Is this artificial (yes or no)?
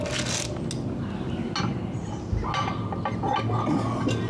no